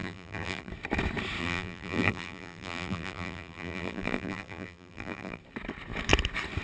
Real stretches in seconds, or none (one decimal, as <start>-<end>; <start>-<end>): 0.7-1.4; 5.4-6.6